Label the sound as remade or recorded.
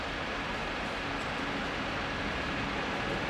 recorded